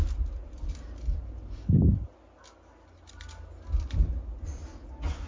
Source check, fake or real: real